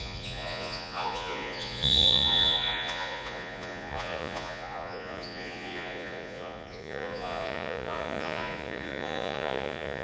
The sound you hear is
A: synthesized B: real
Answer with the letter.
A